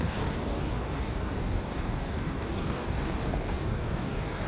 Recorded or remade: remade